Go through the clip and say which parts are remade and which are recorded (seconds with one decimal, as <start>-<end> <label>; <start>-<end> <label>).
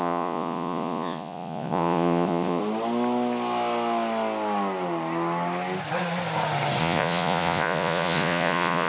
0.0-2.6 remade; 2.6-6.8 recorded; 6.8-8.9 remade